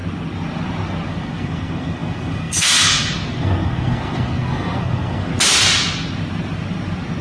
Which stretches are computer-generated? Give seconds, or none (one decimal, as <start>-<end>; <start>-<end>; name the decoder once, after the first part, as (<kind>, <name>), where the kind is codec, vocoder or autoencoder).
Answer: 1.1-5.3 (codec, SNAC)